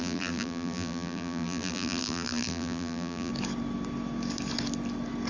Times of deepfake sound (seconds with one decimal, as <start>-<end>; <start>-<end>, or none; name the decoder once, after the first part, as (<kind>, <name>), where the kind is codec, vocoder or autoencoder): 0.0-3.3 (vocoder, BigVGAN v2)

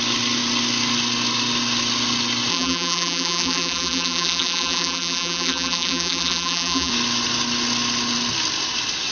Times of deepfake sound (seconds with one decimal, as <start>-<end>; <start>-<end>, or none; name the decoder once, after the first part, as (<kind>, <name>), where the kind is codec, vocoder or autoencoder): 2.5-6.9 (vocoder, BigVGAN v2)

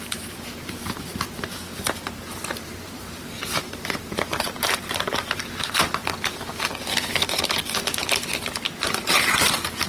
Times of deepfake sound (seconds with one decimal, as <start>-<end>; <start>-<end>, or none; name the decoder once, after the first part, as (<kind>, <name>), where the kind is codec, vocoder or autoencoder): 0.0-6.0 (vocoder, BigVGAN v2); 9.2-9.9

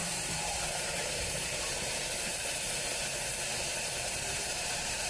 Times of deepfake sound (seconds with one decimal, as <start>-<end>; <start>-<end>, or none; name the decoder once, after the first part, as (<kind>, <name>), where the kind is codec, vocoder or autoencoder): 0.0-2.4 (vocoder, BigVGAN v2); 3.8-5.1

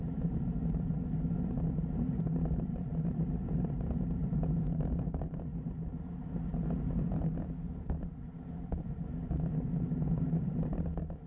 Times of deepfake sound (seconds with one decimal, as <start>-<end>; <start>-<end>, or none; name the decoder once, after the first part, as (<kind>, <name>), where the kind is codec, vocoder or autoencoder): 5.5-6.3 (vocoder, BigVGAN v2)